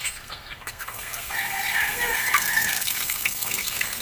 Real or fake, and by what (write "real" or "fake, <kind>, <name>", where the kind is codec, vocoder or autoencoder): fake, codec, SNAC